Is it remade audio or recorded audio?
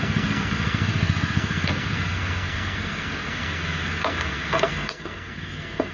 remade